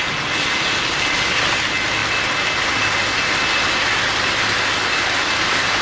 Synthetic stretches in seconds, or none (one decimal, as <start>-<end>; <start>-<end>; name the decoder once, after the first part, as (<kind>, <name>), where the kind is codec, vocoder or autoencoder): none